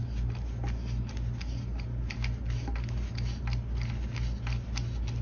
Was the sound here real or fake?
real